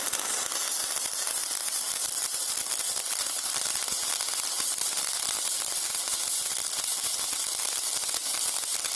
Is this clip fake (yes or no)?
no